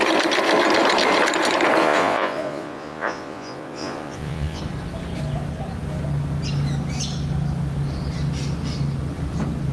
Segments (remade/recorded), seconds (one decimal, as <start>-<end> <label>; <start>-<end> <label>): 0.0-1.8 recorded; 1.8-4.6 remade; 4.6-9.7 recorded